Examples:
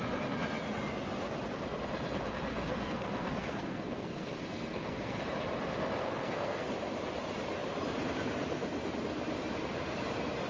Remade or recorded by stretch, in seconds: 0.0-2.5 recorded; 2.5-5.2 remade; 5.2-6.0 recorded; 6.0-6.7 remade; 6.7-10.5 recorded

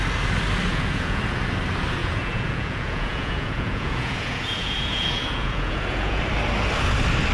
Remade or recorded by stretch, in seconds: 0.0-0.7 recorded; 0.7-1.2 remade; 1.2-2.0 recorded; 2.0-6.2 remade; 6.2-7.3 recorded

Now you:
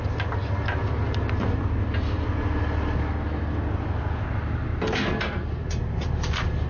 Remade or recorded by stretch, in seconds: 0.0-6.7 recorded

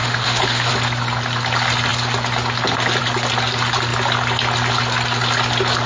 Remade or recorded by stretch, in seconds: 0.0-0.7 remade; 0.7-5.9 recorded

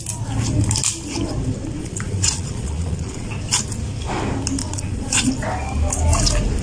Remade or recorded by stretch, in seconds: 0.0-1.8 recorded; 1.8-3.3 remade; 3.3-4.6 recorded; 4.6-5.3 remade; 5.3-6.6 recorded

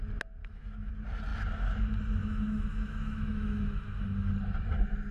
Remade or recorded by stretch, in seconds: 0.0-0.4 recorded; 0.4-0.9 remade; 0.9-2.2 recorded; 2.2-4.3 remade; 4.3-5.1 recorded